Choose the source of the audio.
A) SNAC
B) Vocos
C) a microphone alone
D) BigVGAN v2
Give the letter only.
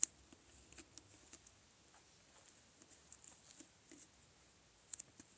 C